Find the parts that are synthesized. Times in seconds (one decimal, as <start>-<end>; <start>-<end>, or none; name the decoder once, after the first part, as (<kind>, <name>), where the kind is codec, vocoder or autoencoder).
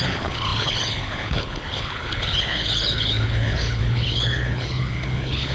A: 0.0-5.5 (codec, HILCodec)